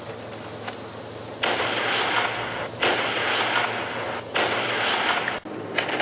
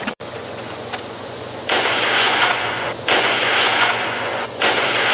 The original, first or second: first